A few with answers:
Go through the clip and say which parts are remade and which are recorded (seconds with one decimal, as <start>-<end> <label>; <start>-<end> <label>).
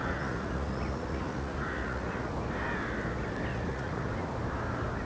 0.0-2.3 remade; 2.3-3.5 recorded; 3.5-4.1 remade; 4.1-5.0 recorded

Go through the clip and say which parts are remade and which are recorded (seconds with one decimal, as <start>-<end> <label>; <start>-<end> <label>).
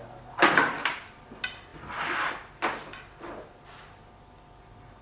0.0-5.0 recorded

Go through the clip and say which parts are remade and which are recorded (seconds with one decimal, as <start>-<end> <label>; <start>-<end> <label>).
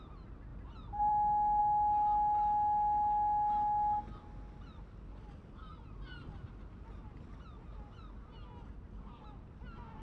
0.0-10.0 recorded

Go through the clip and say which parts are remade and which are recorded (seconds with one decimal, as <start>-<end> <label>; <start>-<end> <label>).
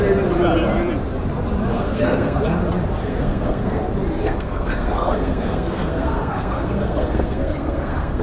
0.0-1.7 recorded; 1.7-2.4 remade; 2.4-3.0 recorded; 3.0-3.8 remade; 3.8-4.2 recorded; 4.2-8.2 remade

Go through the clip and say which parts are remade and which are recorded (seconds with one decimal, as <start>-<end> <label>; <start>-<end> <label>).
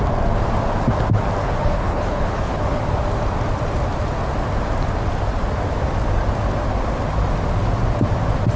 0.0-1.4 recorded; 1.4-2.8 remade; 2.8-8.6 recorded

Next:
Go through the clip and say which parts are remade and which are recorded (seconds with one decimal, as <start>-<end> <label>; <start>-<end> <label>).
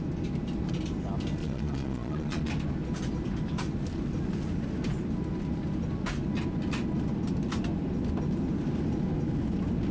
0.0-1.4 recorded; 1.4-2.5 remade; 2.5-9.9 recorded